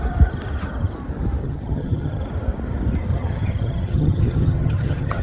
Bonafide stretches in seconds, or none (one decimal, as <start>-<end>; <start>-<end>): 0.0-1.4; 2.2-3.1